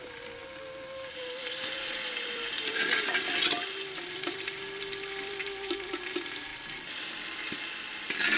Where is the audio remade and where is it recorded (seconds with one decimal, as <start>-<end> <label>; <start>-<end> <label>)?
0.0-0.4 remade; 0.4-1.1 recorded; 1.1-6.5 remade; 6.5-8.0 recorded; 8.0-8.4 remade